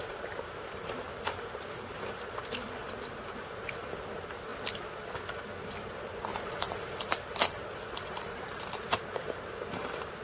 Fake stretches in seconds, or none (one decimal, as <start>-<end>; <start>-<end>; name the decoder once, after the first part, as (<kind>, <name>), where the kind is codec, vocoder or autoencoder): 0.0-4.5 (vocoder, BigVGAN v2); 5.7-10.2